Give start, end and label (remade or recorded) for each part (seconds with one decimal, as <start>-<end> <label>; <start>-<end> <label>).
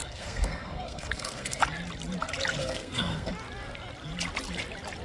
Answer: 0.0-1.6 remade; 1.6-2.6 recorded; 2.6-3.3 remade; 3.3-5.0 recorded